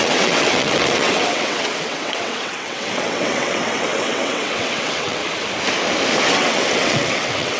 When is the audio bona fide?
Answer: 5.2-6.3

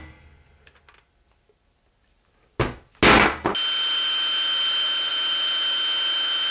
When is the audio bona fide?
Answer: 0.0-6.5

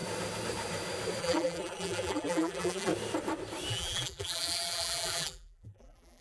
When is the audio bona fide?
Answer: 0.0-1.2; 2.9-3.7

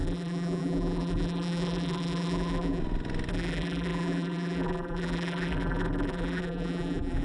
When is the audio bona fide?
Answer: 2.8-3.3